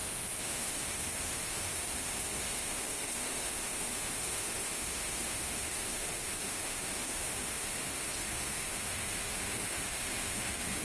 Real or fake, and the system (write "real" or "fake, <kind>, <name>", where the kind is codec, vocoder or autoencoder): fake, autoencoder, DAC-VAE